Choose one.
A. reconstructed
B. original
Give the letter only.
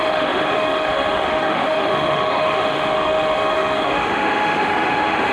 A